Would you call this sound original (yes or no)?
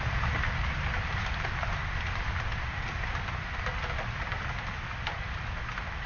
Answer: yes